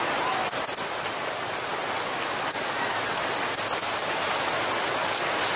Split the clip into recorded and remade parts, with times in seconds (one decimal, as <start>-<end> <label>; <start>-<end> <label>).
0.0-3.8 recorded; 3.8-4.6 remade; 4.6-5.6 recorded